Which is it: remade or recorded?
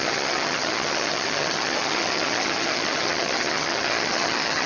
remade